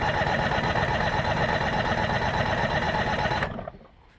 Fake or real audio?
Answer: real